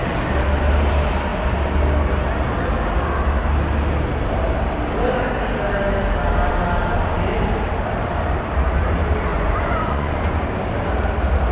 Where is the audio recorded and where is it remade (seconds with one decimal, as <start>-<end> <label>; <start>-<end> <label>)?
0.0-9.3 recorded; 9.3-10.4 remade; 10.4-11.5 recorded